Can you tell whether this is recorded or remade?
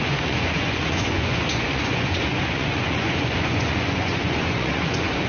remade